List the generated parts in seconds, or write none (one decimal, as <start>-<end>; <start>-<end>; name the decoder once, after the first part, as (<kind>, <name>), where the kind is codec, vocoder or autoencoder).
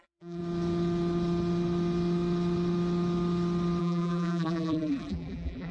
0.0-0.4 (vocoder, BigVGAN v2); 3.8-5.7